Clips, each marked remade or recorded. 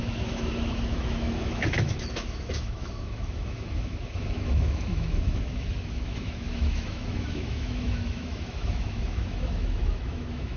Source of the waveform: remade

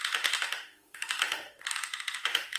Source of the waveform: remade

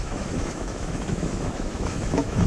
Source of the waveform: remade